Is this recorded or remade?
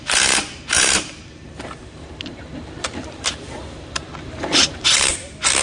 remade